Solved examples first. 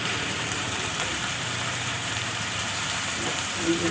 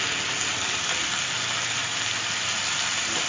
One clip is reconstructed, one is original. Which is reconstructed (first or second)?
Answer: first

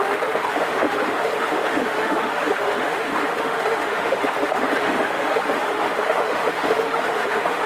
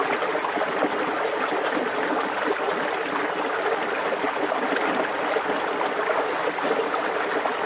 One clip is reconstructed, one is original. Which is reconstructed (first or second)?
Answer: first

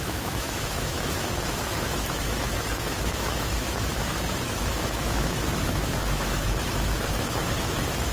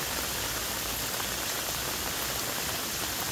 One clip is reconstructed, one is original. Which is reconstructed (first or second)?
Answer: first